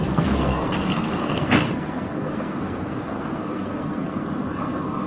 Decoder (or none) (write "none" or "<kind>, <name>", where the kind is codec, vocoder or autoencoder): codec, SNAC